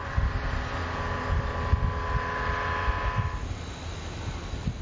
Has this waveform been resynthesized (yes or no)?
no